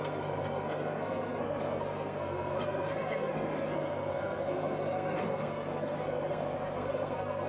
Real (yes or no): no